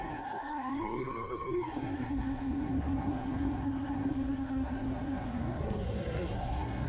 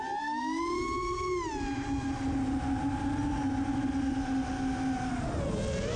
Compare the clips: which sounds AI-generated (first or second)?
first